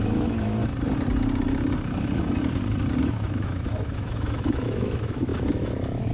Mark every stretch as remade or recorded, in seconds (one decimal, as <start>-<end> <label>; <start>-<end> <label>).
0.0-0.6 remade; 0.6-3.0 recorded; 3.0-6.1 remade